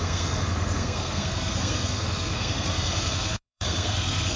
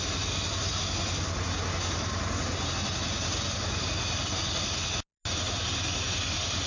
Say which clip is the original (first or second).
second